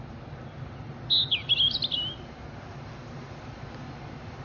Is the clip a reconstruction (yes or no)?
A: no